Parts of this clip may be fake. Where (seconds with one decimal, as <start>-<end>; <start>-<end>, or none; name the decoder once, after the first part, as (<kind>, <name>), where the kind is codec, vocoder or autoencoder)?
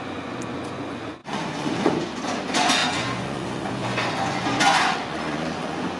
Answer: 0.0-6.0 (vocoder, Vocos)